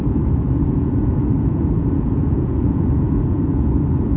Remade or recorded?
remade